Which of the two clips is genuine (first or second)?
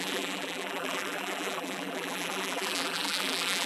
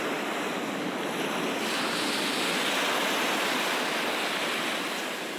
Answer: second